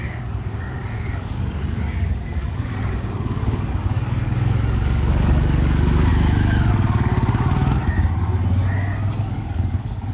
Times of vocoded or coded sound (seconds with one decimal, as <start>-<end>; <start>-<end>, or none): 0.0-6.1; 6.7-7.8; 9.2-10.1